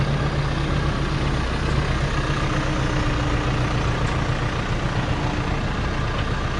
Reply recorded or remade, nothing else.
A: recorded